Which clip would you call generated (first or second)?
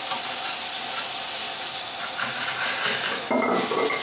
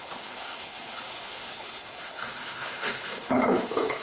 second